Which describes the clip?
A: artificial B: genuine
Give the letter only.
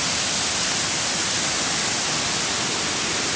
B